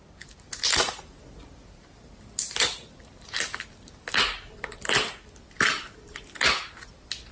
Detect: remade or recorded recorded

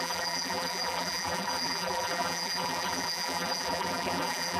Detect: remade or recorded remade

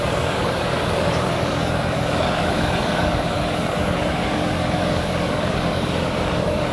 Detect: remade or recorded remade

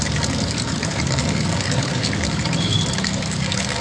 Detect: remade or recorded remade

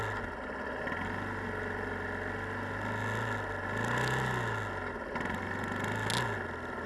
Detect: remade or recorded recorded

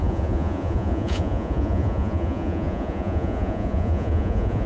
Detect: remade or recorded remade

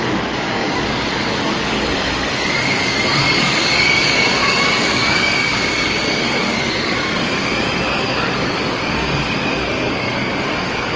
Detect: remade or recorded remade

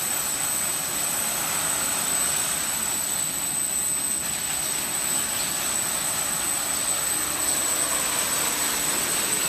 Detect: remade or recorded recorded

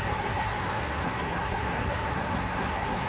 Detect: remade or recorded remade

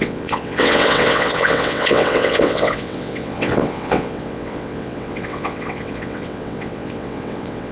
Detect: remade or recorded remade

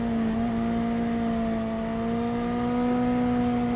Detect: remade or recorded recorded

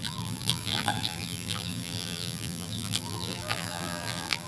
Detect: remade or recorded remade